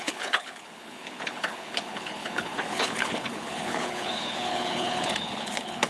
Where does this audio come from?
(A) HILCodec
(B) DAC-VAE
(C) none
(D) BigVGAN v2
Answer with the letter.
A